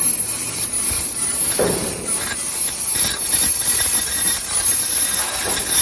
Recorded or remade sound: recorded